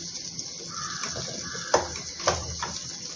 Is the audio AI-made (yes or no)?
no